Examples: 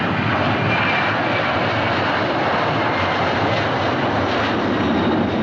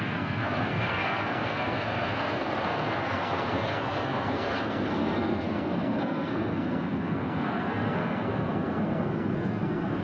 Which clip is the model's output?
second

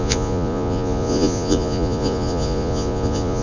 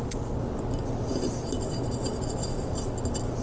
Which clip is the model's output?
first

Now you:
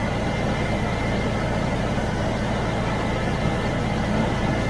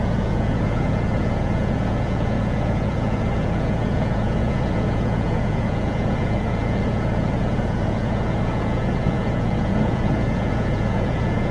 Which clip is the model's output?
second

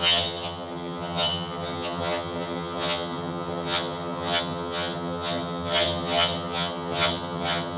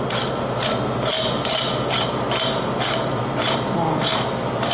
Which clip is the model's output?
first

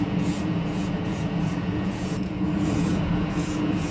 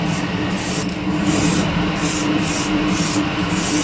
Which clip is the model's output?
first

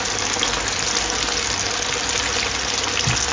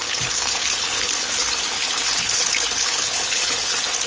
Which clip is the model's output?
second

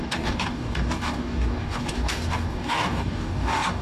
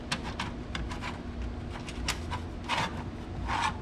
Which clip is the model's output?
first